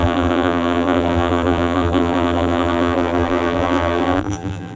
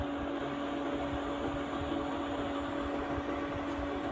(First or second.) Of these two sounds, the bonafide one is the second